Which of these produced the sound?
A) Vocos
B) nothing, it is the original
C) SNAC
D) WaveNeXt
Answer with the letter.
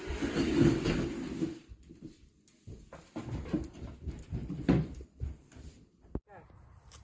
B